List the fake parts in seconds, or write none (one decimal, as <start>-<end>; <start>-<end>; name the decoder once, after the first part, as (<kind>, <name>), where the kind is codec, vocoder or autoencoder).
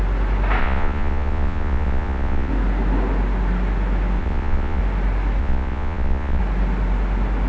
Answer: 0.6-2.5 (vocoder, Vocos); 4.2-4.8; 5.4-6.4